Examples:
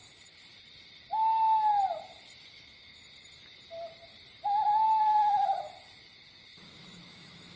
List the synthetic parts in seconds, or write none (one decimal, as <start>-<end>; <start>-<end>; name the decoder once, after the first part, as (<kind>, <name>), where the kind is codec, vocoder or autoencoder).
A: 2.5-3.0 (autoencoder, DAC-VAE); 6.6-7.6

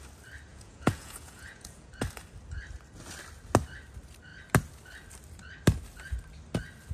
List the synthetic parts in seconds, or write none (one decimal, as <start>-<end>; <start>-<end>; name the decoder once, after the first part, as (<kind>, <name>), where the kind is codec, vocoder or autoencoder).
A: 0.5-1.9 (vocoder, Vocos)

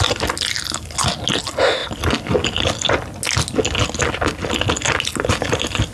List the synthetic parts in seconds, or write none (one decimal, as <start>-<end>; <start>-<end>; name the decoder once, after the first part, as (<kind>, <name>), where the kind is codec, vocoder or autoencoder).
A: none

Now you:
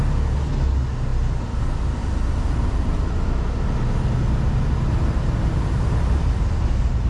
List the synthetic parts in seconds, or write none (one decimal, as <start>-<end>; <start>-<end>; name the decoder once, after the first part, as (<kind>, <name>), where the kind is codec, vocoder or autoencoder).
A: 1.1-1.6 (vocoder, BigVGAN v2); 2.0-3.0

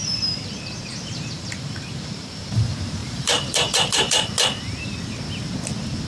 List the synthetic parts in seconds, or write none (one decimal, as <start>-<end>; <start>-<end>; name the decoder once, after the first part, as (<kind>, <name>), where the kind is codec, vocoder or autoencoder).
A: 0.0-2.6 (vocoder, BigVGAN v2); 3.0-4.3

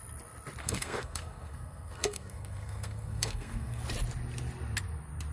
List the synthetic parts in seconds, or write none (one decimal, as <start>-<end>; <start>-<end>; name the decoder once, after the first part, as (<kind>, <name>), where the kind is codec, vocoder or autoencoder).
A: 0.6-3.8 (codec, SNAC)

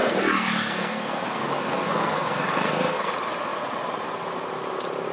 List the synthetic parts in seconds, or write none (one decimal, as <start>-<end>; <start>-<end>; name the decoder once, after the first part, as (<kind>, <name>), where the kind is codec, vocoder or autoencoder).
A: 0.0-3.1 (codec, SNAC)

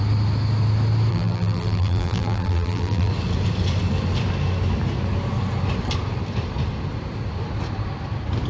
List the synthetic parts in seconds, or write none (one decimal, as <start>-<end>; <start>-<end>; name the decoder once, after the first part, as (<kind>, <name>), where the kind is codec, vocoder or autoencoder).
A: 1.1-3.1 (vocoder, BigVGAN v2)